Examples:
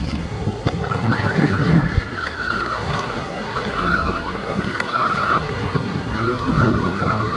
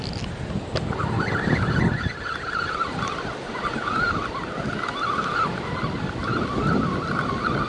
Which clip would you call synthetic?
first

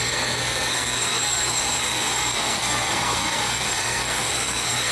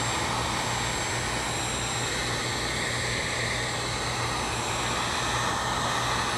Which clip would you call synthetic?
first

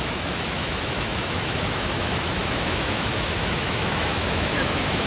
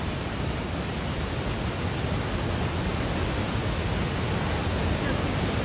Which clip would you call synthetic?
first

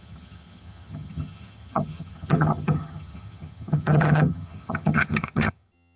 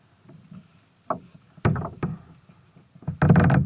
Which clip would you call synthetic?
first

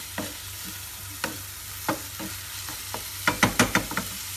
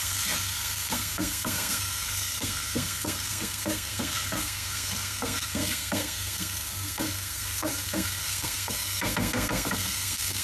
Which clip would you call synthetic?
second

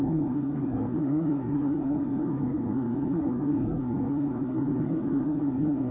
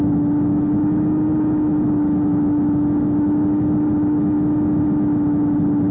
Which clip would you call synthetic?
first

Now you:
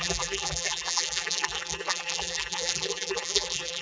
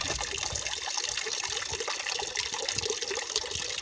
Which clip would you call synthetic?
first